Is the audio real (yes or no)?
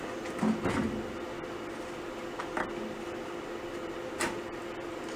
yes